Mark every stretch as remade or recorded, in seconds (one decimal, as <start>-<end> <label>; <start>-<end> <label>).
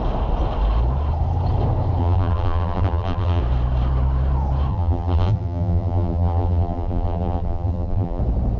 0.0-2.0 recorded; 2.0-3.4 remade; 3.4-4.7 recorded; 4.7-8.2 remade; 8.2-8.6 recorded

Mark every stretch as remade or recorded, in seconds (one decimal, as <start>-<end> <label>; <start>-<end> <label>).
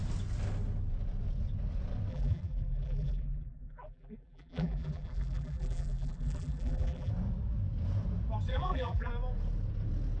0.0-2.1 recorded; 2.1-7.1 remade; 7.1-8.5 recorded; 8.5-9.1 remade; 9.1-10.2 recorded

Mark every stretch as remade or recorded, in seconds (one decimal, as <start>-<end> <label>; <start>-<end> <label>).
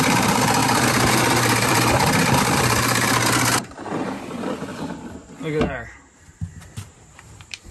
0.0-0.6 remade; 0.6-1.1 recorded; 1.1-4.7 remade; 4.7-5.6 recorded; 5.6-7.7 remade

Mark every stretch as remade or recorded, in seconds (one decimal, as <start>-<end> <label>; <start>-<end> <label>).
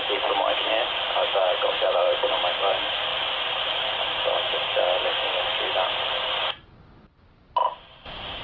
0.0-8.4 recorded